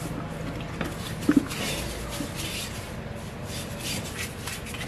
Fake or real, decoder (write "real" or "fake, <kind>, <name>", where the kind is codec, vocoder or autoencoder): real